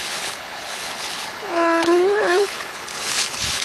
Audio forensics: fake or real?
fake